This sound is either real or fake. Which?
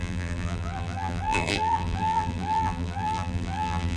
fake